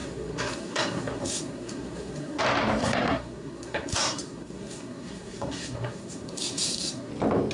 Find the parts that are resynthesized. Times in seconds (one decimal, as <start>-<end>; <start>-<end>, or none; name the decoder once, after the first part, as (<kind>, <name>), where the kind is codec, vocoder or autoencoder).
0.0-2.4 (codec, SNAC); 2.8-7.1